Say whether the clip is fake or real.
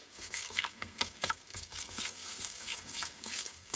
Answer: fake